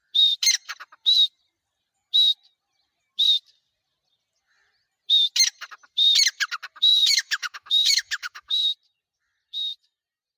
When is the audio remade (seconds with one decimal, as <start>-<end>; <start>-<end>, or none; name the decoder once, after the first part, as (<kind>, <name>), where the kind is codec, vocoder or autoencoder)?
6.9-8.5 (autoencoder, DAC-VAE)